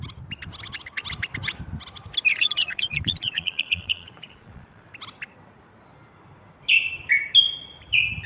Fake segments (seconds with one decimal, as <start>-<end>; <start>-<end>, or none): 2.3-4.9